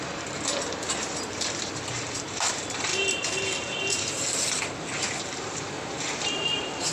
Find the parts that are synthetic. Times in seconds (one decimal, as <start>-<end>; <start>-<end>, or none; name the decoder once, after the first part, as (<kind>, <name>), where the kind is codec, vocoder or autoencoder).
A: 0.0-6.9 (vocoder, BigVGAN v2)